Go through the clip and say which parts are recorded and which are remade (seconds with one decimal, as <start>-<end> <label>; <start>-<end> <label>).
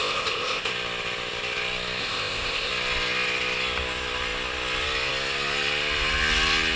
0.0-0.7 remade; 0.7-2.0 recorded; 2.0-2.7 remade; 2.7-6.8 recorded